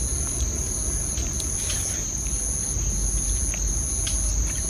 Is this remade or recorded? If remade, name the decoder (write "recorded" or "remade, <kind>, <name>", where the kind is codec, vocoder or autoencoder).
recorded